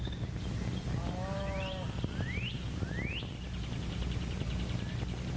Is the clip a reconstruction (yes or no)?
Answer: no